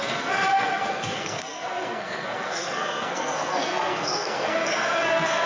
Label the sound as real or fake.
fake